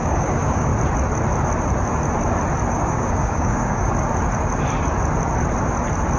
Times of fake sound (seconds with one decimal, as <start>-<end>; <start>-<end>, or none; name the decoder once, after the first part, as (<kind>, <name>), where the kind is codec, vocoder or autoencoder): 0.0-0.7 (codec, DAC); 2.7-3.9